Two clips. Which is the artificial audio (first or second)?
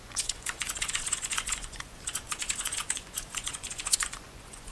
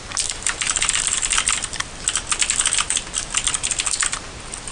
first